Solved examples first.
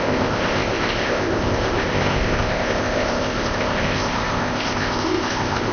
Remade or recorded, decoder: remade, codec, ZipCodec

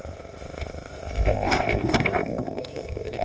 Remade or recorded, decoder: remade, codec, ZipCodec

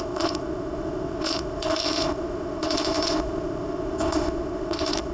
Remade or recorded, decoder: remade, codec, ZipCodec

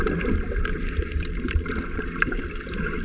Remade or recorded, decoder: recorded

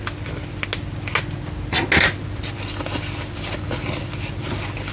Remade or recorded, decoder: recorded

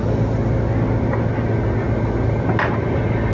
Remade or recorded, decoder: recorded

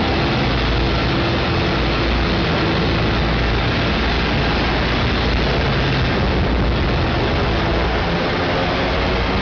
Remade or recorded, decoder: recorded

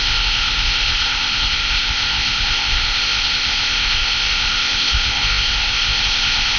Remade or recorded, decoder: remade, codec, ZipCodec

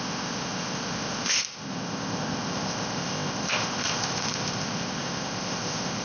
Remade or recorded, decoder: remade, codec, ZipCodec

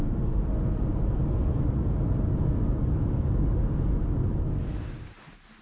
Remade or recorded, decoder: recorded